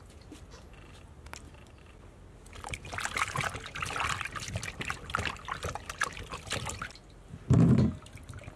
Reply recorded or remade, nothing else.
recorded